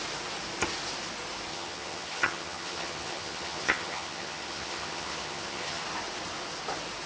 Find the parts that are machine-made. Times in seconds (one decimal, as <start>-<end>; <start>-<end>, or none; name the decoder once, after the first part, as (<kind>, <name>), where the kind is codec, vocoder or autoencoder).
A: 1.5-5.8 (vocoder, HiFi-GAN)